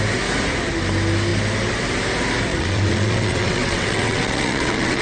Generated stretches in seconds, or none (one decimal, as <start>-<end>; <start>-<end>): 2.5-5.0